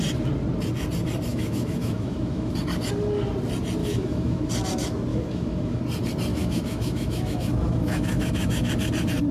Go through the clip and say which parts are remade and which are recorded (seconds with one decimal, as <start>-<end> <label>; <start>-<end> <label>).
0.0-1.3 recorded; 1.3-2.5 remade; 2.5-3.8 recorded; 3.8-4.5 remade; 4.5-5.1 recorded; 5.1-5.8 remade; 5.8-6.3 recorded; 6.3-8.7 remade; 8.7-9.3 recorded